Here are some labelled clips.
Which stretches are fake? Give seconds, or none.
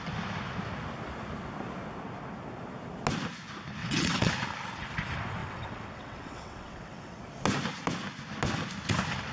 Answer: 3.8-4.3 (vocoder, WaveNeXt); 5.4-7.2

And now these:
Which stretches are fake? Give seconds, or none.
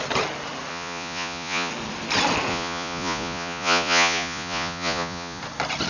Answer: 0.7-1.7 (vocoder, Vocos); 2.5-5.4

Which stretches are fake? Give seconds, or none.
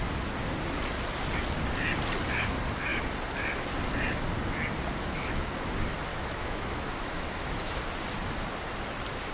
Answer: 6.1-7.8 (autoencoder, DAC-VAE)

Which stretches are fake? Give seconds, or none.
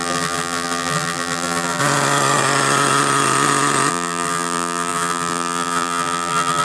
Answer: 0.0-1.8 (vocoder, BigVGAN v2); 3.9-6.6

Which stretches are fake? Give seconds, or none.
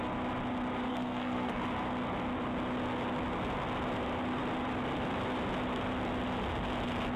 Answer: 0.9-1.6 (codec, SNAC)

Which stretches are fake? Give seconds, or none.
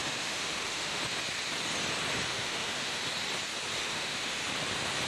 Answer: 0.0-1.0 (autoencoder, DAC-VAE); 2.3-3.0; 3.8-4.4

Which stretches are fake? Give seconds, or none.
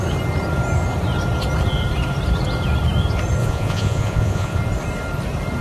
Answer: 3.4-4.6 (vocoder, Vocos)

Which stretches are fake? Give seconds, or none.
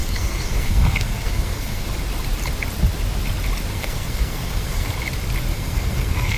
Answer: 0.0-1.9 (codec, SNAC); 3.7-4.9; 5.5-6.4